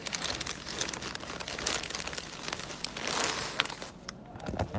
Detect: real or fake real